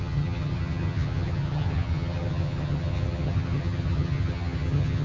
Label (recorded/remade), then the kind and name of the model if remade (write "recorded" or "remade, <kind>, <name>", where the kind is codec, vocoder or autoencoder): remade, vocoder, HiFi-GAN